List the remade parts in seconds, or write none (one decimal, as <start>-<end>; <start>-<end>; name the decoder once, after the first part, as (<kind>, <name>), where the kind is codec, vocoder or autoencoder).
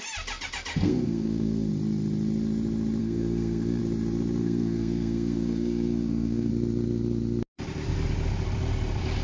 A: 0.7-1.7 (codec, SNAC); 3.0-3.8; 4.4-6.5